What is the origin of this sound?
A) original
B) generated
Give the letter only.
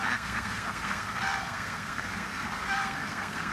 B